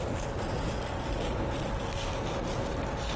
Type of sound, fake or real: real